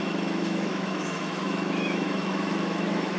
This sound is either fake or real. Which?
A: fake